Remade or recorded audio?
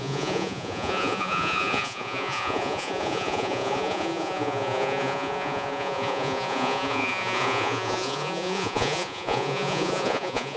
remade